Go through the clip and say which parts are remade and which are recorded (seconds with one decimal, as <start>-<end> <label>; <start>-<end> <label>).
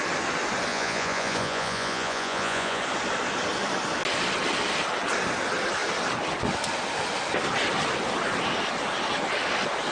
0.0-0.7 recorded; 0.7-2.8 remade; 2.8-9.9 recorded